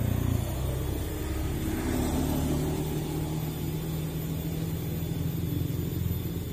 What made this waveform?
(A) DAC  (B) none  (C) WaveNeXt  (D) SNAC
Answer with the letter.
B